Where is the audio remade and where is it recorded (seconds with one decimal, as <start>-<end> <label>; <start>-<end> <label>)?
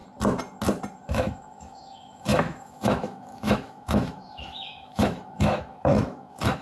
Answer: 0.0-1.1 recorded; 1.1-6.6 remade